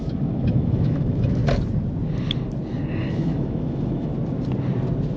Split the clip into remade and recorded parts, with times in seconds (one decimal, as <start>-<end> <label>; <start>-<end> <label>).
0.0-1.4 remade; 1.4-3.1 recorded; 3.1-4.1 remade; 4.1-5.2 recorded